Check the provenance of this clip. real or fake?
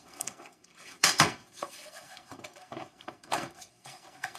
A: fake